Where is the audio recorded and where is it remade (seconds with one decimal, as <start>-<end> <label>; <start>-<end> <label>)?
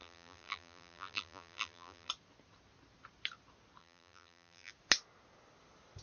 0.0-2.1 remade; 2.1-3.8 recorded; 3.8-4.7 remade; 4.7-6.0 recorded